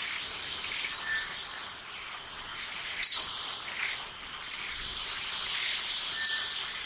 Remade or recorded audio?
recorded